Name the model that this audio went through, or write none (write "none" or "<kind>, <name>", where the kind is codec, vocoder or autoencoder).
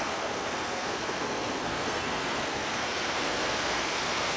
codec, SNAC